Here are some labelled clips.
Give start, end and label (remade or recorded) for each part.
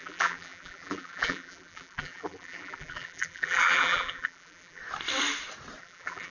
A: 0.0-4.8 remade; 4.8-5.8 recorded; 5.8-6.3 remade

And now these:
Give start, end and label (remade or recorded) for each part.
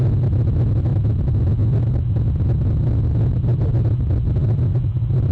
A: 0.0-5.3 recorded